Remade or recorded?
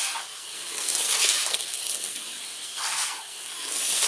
remade